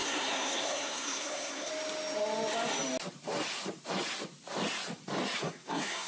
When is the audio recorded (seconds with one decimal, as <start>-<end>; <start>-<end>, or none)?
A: 1.7-5.4